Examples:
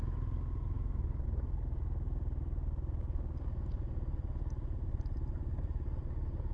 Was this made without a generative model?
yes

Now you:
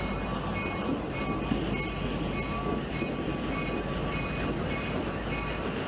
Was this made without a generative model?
yes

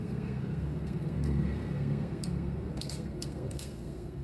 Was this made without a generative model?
no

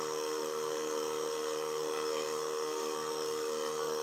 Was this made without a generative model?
no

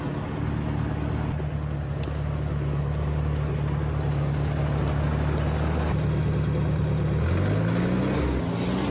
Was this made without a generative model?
yes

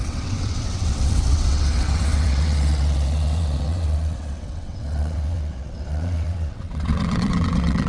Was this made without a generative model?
no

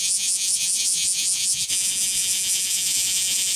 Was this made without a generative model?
no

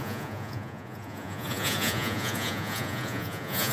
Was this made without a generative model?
no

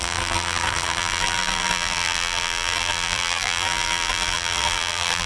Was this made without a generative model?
no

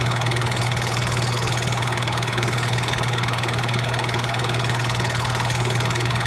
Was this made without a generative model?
no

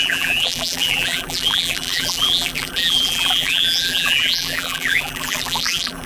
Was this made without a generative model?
no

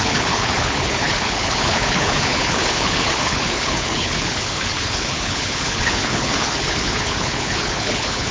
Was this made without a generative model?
no